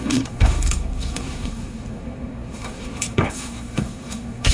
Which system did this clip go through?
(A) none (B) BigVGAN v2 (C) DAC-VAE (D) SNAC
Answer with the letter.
D